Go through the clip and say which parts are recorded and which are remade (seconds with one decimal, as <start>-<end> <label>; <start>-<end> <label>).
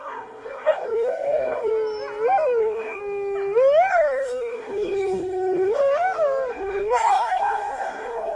0.0-1.7 remade; 1.7-2.6 recorded; 2.6-3.0 remade; 3.0-3.9 recorded; 3.9-5.8 remade; 5.8-6.5 recorded; 6.5-8.4 remade